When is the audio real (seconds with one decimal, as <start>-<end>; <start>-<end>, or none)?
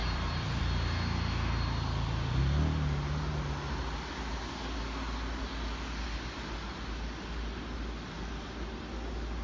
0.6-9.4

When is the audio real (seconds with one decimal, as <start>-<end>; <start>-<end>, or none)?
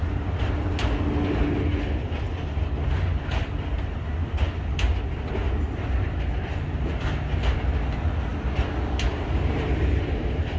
0.0-10.6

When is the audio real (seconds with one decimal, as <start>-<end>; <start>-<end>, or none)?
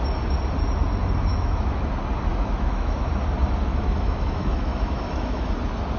0.0-1.3; 1.9-2.3; 3.1-3.7; 5.5-6.0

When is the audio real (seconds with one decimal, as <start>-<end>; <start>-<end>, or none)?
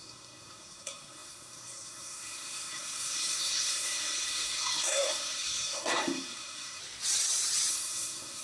6.8-7.7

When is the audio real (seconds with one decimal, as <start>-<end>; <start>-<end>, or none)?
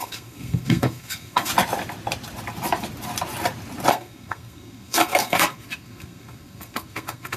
1.5-3.9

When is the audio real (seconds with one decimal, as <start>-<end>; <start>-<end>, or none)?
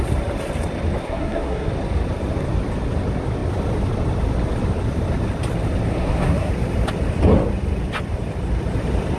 0.0-1.0; 1.7-5.9; 6.5-9.2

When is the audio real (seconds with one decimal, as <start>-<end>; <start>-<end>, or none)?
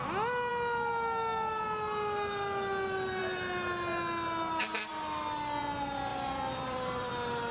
0.0-6.1; 7.1-7.5